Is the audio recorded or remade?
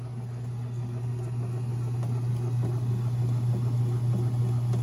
recorded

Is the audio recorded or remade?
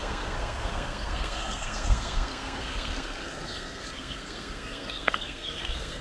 remade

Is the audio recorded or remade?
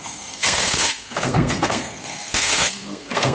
remade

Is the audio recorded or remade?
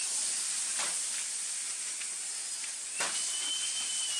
recorded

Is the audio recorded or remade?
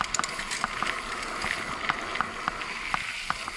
recorded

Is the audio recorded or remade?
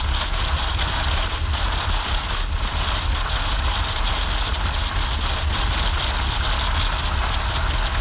recorded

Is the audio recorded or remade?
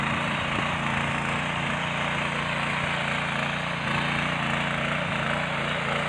recorded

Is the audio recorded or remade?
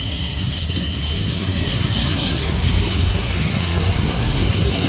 remade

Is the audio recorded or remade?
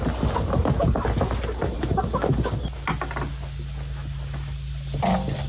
recorded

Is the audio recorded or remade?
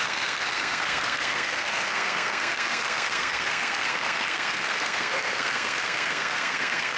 remade